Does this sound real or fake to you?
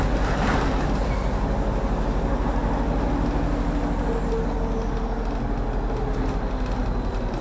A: real